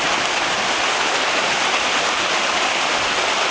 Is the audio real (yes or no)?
yes